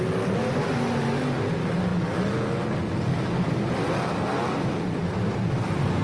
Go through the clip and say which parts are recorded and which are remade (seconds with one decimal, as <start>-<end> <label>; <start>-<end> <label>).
0.0-6.0 recorded